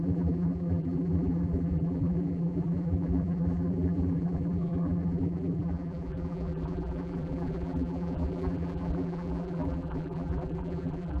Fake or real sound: fake